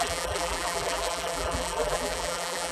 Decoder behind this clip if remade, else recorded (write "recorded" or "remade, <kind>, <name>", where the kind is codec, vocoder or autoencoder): remade, vocoder, BigVGAN v2